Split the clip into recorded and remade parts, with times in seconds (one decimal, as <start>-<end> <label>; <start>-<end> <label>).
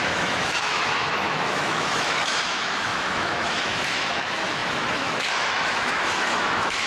0.0-6.9 remade